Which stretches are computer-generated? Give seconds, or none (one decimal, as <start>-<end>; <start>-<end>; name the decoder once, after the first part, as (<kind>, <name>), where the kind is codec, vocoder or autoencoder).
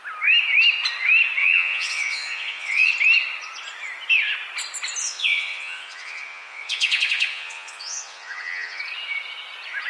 1.4-2.9 (vocoder, Vocos); 5.0-8.8